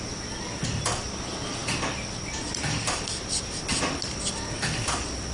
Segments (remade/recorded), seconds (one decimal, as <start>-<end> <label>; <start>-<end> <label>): 0.0-5.3 recorded